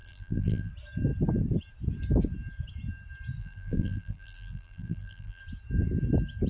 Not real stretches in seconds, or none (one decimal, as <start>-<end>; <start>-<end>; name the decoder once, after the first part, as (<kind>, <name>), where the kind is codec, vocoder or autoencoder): 0.0-0.7 (vocoder, BigVGAN v2); 3.4-5.4